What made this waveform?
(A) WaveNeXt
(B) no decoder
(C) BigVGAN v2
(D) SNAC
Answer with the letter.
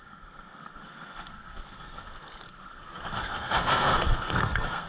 D